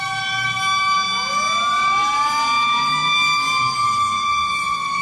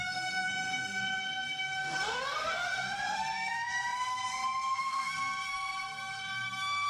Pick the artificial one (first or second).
second